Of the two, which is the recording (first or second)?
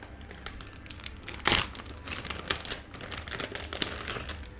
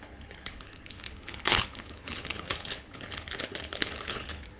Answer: first